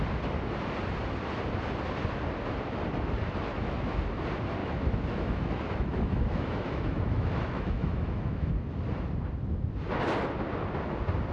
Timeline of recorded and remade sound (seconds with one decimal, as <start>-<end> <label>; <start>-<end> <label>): 0.0-3.5 recorded; 3.5-4.0 remade; 4.0-4.6 recorded; 4.6-8.5 remade; 8.5-11.3 recorded